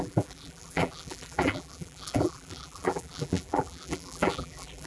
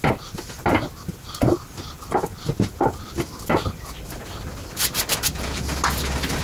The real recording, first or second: second